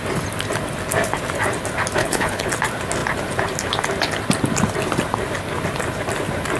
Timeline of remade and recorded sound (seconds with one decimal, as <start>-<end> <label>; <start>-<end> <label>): 0.0-2.0 recorded; 2.0-2.5 remade; 2.5-6.6 recorded